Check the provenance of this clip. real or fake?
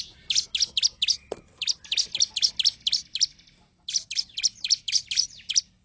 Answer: real